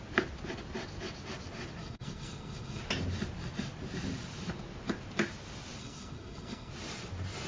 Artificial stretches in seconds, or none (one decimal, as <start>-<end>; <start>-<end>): 1.8-2.8; 5.8-6.7